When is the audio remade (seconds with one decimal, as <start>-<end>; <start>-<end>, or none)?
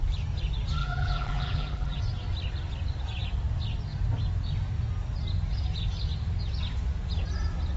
0.8-2.0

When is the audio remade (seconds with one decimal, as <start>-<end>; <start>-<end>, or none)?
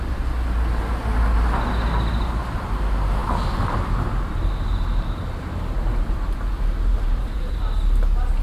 3.2-7.6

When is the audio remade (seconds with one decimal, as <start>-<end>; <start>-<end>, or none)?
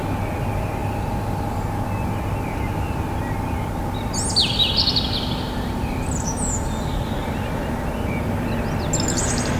4.4-7.9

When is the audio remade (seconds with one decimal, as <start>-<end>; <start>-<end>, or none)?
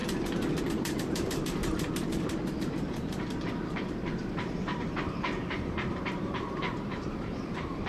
0.6-7.9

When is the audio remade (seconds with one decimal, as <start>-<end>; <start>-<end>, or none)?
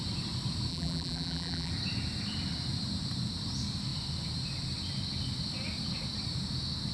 0.7-1.7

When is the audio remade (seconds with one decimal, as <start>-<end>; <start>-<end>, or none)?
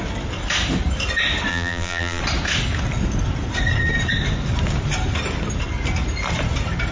1.5-2.2